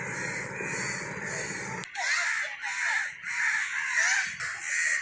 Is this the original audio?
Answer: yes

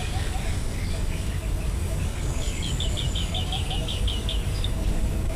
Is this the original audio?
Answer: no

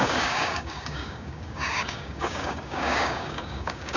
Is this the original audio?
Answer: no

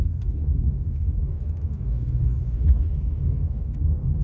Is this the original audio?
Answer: no